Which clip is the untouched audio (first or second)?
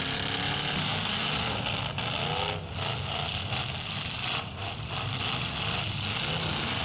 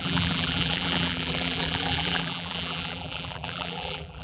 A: first